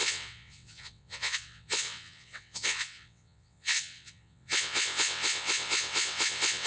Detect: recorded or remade remade